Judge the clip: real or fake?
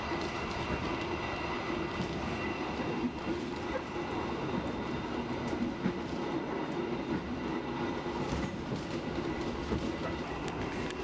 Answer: real